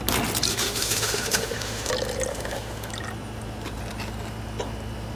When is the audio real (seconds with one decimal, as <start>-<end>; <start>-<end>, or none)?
0.0-0.5; 1.9-2.3; 2.9-5.2